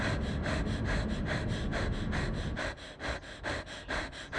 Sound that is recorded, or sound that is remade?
recorded